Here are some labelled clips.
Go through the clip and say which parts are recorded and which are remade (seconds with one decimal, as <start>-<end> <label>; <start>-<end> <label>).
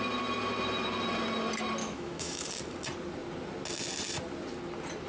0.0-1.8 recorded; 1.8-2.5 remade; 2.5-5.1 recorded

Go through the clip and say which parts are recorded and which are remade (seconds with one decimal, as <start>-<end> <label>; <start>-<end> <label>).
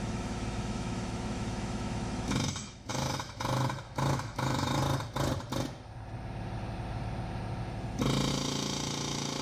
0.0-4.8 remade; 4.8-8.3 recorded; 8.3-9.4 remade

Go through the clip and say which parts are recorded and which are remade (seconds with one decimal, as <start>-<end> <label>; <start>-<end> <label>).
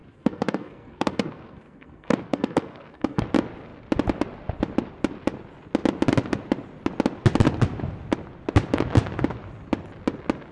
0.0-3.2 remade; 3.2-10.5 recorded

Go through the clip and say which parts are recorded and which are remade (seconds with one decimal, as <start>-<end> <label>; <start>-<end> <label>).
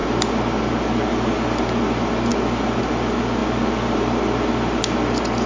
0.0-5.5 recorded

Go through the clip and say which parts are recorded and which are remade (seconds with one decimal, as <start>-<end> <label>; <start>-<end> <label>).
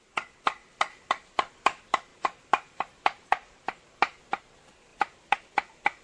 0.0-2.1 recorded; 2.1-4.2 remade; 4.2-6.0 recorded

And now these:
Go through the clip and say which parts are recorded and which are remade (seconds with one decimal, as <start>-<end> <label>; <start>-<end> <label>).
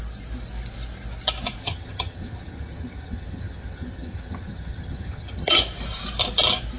0.0-1.6 recorded; 1.6-5.6 remade; 5.6-6.8 recorded